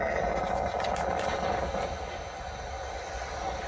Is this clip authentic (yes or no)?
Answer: yes